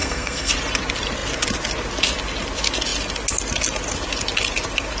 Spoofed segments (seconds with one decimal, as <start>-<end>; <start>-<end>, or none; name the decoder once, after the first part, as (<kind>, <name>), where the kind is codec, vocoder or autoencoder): 0.0-0.5 (codec, SNAC)